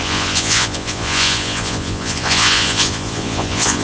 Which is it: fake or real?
fake